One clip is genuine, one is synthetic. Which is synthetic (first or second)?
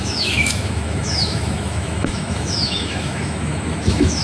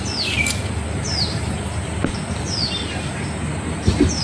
first